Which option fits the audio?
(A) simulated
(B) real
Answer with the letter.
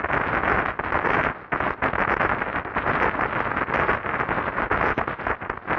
B